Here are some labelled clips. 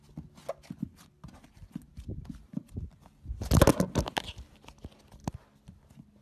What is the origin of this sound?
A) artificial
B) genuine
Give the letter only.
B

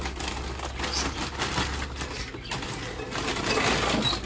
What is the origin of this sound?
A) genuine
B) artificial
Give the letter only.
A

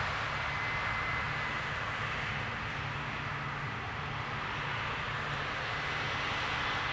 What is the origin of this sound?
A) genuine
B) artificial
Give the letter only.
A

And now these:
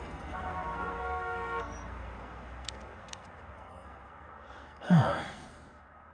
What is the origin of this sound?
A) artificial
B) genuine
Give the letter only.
A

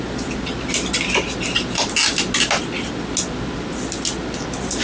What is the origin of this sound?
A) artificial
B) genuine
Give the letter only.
B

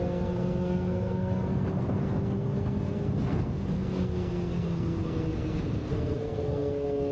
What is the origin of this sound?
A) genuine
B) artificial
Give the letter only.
B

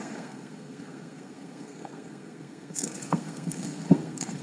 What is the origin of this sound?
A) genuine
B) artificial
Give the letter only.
B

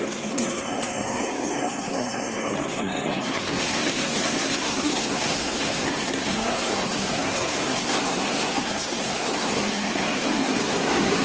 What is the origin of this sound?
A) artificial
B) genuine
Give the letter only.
A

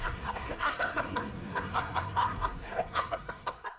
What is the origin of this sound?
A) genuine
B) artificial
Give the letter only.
B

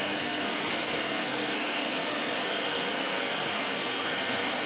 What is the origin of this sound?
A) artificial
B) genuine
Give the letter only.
A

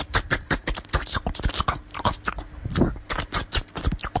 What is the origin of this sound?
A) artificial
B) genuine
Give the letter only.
B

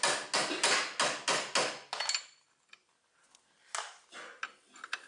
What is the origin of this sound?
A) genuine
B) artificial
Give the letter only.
A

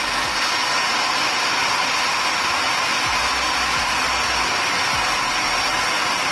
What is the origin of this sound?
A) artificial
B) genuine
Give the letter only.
B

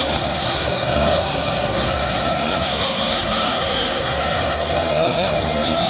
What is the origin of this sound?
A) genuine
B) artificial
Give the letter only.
B